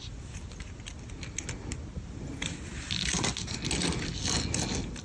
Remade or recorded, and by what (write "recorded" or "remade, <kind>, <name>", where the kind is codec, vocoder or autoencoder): recorded